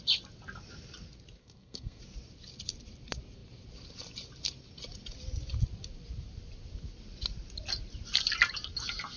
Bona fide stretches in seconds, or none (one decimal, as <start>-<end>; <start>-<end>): 0.0-1.4; 2.0-9.2